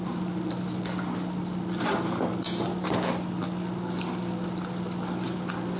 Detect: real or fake real